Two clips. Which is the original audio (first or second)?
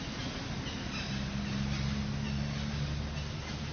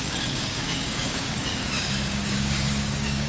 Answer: first